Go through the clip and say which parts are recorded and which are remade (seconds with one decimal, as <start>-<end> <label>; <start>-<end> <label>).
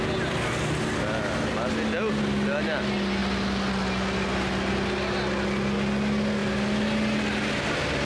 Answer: 0.0-8.0 recorded